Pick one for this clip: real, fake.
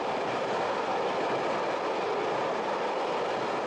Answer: real